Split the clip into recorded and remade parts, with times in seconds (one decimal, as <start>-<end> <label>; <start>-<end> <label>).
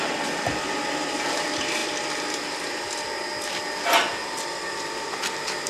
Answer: 0.0-5.7 recorded